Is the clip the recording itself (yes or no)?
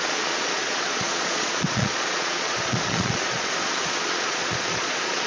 no